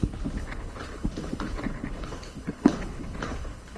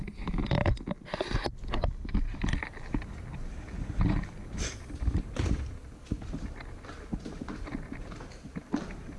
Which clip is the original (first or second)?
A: second